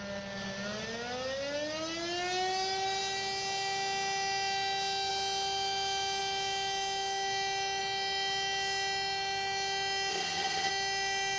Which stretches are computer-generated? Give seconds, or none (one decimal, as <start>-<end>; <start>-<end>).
10.1-10.7